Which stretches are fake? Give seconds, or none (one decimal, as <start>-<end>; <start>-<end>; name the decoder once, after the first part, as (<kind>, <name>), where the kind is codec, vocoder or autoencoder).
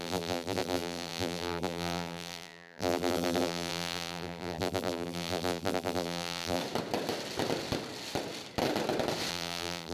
0.0-6.6 (vocoder, BigVGAN v2); 9.3-9.9